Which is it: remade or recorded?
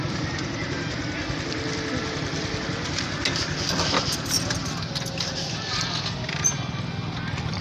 recorded